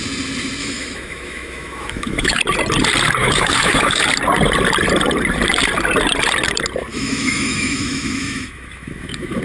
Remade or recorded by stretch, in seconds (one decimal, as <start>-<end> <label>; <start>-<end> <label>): 0.0-0.6 recorded; 0.6-2.4 remade; 2.4-3.2 recorded; 3.2-4.0 remade; 4.0-6.9 recorded; 6.9-9.4 remade